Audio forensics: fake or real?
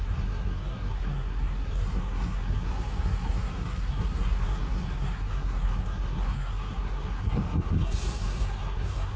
fake